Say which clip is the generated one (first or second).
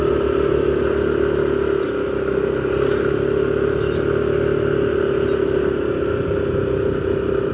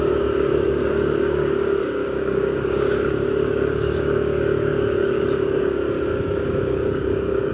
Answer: second